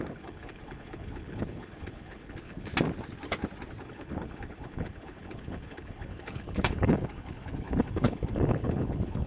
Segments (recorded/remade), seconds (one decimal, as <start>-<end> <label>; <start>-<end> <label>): 0.0-2.7 remade; 2.7-3.8 recorded; 3.8-9.3 remade